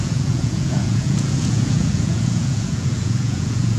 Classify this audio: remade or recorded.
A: remade